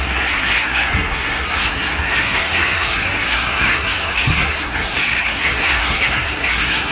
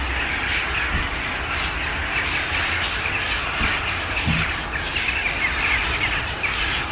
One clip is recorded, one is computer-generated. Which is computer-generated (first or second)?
first